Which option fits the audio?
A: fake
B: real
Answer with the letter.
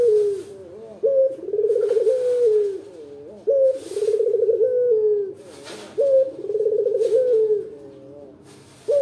B